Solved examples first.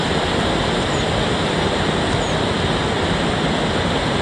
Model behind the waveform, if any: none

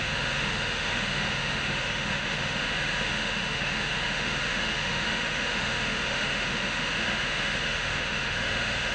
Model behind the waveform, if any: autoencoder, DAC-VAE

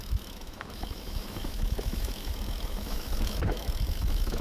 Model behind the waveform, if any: autoencoder, DAC-VAE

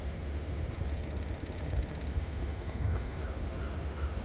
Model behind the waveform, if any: autoencoder, DAC-VAE